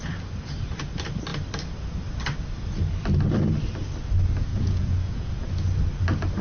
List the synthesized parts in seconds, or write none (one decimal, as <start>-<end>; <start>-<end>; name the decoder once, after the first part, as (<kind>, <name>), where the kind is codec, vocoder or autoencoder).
4.5-5.5 (vocoder, Vocos)